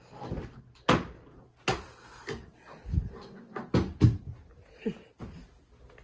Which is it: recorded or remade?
recorded